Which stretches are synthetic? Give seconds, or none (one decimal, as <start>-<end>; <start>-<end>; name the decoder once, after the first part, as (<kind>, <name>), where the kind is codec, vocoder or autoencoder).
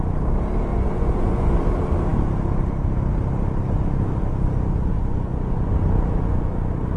0.7-1.6 (vocoder, Vocos); 4.9-5.7